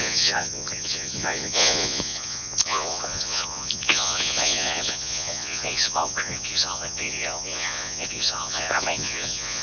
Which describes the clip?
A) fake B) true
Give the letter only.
A